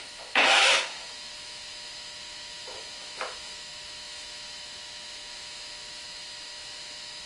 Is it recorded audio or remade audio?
remade